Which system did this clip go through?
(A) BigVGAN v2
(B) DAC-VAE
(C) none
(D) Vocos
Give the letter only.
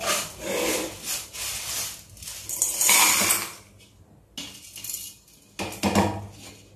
C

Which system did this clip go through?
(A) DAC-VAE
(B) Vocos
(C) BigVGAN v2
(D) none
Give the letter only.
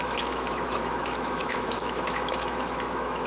A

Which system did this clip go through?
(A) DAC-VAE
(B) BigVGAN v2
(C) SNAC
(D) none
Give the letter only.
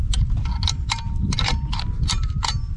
D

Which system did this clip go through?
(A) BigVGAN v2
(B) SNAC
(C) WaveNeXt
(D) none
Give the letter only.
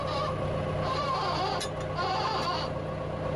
D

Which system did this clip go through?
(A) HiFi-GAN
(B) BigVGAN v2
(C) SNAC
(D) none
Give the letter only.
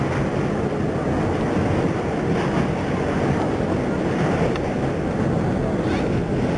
D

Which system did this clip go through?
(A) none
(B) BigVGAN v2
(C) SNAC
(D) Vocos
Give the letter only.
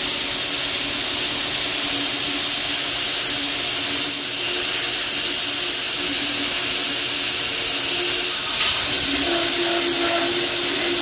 A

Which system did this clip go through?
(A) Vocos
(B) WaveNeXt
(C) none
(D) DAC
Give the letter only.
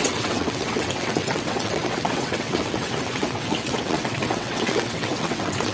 B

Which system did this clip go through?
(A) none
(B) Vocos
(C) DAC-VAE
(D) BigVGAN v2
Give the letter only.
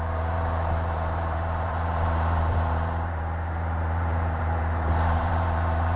D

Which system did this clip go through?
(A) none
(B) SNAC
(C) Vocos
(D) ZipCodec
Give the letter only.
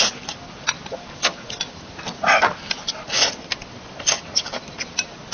A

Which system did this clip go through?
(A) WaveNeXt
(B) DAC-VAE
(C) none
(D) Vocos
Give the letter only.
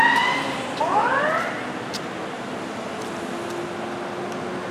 C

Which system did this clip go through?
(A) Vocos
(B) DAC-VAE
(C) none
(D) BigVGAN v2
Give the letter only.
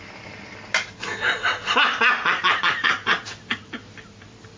C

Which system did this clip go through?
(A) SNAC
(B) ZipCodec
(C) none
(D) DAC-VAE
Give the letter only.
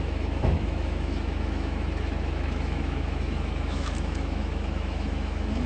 D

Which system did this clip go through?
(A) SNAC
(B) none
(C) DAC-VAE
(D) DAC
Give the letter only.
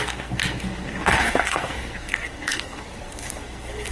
A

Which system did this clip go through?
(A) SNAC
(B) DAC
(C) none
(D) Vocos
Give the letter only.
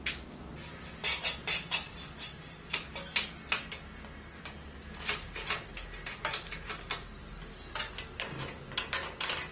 C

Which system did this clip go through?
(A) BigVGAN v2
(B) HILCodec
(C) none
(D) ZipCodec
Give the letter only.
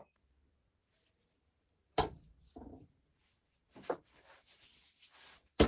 A